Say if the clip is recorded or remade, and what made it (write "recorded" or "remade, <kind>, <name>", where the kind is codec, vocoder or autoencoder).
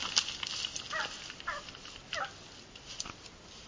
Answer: recorded